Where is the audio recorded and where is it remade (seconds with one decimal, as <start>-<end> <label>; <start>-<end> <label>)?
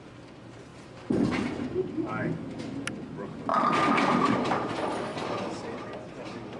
0.0-0.7 recorded; 0.7-2.3 remade; 2.3-3.5 recorded; 3.5-4.6 remade; 4.6-5.1 recorded; 5.1-6.6 remade